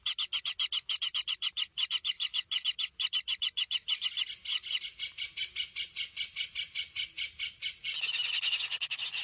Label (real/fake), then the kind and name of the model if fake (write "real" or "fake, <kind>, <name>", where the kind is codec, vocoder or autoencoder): real